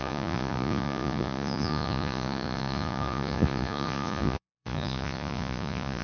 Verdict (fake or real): fake